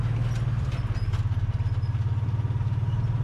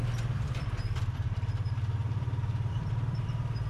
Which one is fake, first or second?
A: second